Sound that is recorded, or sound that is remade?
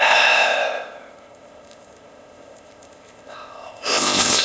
remade